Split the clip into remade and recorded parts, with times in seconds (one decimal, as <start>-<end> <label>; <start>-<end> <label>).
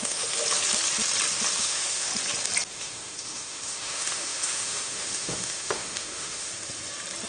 0.0-0.4 remade; 0.4-1.6 recorded; 1.6-2.1 remade; 2.1-2.7 recorded; 2.7-6.5 remade; 6.5-7.3 recorded